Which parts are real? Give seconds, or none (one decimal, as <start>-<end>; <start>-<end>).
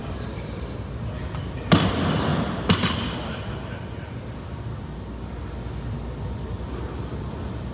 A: 0.0-2.3; 3.8-7.7